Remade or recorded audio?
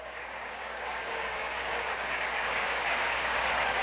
remade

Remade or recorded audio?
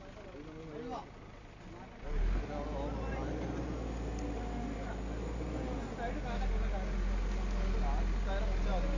recorded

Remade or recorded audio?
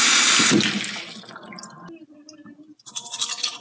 recorded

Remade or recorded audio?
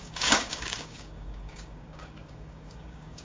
remade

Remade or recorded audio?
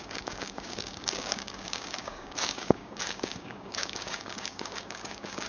remade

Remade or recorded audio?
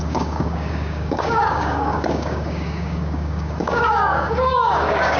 remade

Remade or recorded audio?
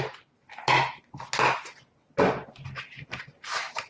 recorded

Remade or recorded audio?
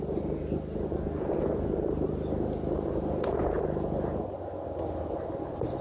recorded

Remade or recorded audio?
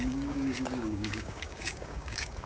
remade